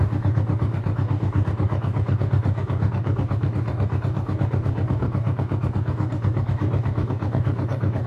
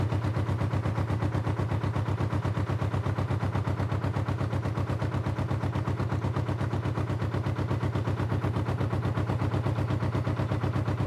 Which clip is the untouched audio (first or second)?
second